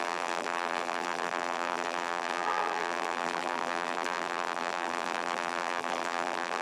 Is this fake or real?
fake